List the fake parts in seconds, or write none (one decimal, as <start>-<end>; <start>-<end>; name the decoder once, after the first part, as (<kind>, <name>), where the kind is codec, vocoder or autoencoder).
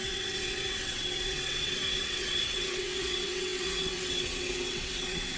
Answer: 0.0-5.4 (vocoder, WaveNeXt)